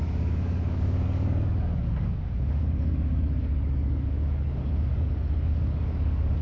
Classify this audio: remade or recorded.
remade